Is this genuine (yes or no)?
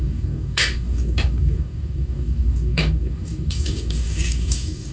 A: no